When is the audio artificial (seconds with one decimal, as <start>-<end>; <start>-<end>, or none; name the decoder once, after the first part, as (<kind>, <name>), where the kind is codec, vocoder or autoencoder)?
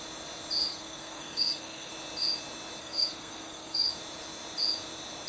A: 0.7-1.9 (codec, SNAC); 2.8-3.9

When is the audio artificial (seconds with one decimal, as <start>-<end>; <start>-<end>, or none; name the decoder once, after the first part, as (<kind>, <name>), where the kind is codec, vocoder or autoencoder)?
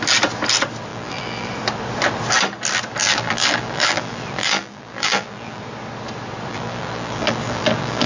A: 0.9-1.5 (vocoder, BigVGAN v2); 3.0-5.6; 6.5-8.1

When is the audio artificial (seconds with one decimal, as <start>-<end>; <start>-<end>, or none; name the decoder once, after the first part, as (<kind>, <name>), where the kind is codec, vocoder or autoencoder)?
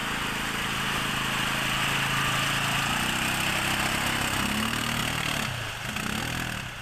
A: none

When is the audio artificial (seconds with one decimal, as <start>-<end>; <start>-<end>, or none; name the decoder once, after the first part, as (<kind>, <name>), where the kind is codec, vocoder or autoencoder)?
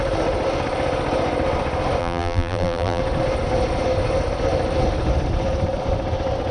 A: 2.0-3.0 (vocoder, BigVGAN v2)